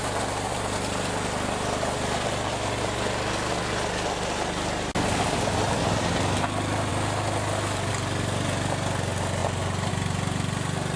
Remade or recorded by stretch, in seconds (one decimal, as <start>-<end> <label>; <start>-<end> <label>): 0.0-11.0 recorded